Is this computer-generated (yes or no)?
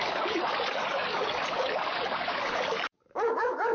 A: yes